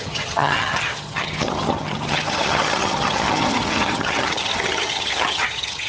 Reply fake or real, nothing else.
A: fake